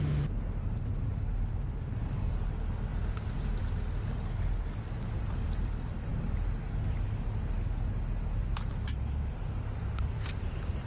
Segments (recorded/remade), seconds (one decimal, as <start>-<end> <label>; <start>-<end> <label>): 0.0-8.4 recorded; 8.4-10.9 remade